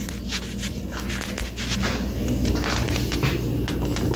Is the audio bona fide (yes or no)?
yes